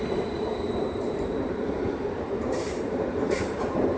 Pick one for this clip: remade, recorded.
remade